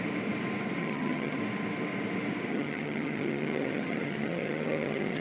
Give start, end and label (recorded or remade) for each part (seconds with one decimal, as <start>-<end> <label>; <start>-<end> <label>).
0.0-0.8 recorded; 0.8-1.4 remade; 1.4-2.5 recorded; 2.5-5.2 remade